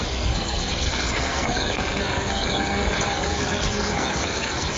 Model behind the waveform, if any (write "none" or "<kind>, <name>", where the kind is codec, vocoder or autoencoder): codec, SNAC